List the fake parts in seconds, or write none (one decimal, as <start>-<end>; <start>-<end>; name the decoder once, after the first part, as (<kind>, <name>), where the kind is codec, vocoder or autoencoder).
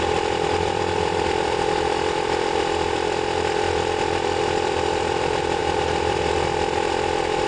0.0-7.5 (vocoder, BigVGAN v2)